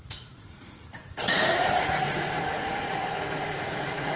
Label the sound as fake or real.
fake